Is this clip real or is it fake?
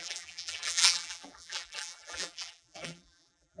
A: fake